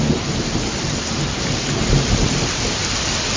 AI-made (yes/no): no